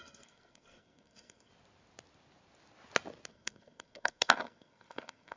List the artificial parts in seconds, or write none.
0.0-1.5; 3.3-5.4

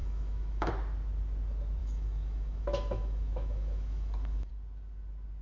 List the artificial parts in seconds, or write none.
0.0-0.7; 1.8-4.5

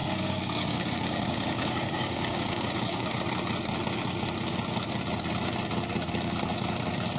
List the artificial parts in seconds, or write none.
0.0-3.1

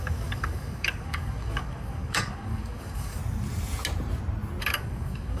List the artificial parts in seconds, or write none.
0.0-3.2; 4.6-5.4